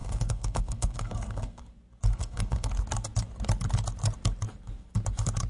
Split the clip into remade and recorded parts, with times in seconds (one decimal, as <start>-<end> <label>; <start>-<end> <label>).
0.0-1.6 remade; 1.6-2.1 recorded; 2.1-2.7 remade; 2.7-5.5 recorded